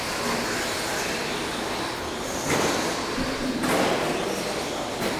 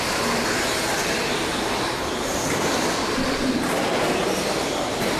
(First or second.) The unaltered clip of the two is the first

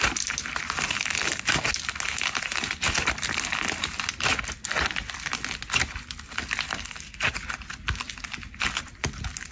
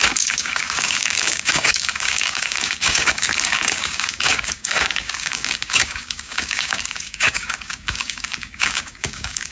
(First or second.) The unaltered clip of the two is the first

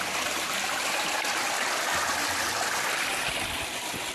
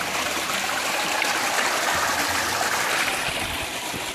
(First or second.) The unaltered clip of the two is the first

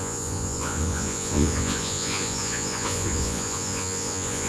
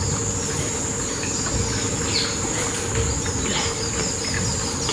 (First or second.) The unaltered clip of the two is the second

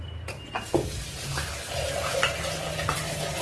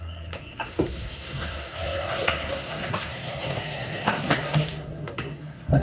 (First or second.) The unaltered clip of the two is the first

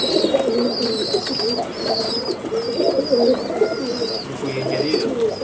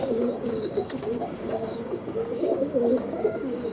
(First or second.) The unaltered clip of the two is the first